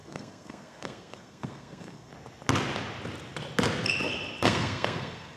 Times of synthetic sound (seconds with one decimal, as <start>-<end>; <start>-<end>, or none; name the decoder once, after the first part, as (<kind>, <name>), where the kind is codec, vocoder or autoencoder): 0.0-2.1 (codec, SNAC); 4.4-5.4